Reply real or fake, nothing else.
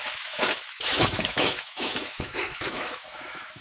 fake